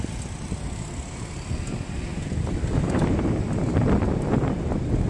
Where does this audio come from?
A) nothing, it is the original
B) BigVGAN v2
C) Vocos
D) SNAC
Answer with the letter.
A